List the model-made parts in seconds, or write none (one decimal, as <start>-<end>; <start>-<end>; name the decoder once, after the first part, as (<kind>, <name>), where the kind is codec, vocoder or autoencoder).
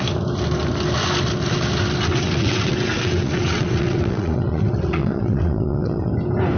2.1-6.1 (vocoder, WaveNeXt)